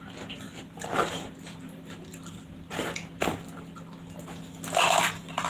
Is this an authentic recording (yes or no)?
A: yes